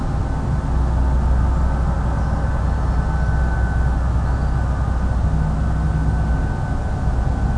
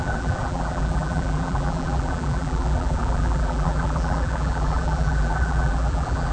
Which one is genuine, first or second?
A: first